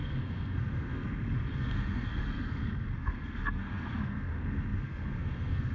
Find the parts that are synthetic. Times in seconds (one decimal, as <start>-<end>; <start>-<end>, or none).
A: 0.0-5.7